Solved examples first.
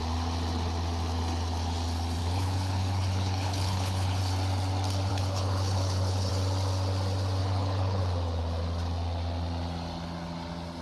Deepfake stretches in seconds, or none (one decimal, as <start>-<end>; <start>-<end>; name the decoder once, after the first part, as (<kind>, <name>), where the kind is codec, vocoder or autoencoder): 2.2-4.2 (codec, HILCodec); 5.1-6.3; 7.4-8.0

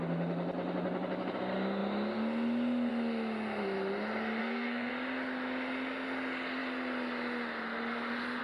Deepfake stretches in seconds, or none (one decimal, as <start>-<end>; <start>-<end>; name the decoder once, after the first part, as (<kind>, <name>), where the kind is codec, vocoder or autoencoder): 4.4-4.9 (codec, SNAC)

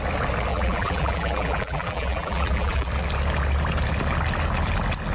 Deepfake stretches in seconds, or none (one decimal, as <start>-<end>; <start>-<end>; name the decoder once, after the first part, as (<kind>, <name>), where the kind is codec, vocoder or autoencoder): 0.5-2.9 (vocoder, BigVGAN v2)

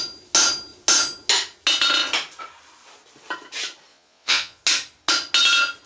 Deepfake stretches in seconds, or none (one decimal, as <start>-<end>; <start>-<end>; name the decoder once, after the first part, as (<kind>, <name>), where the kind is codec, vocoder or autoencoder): 3.9-4.6 (vocoder, Vocos)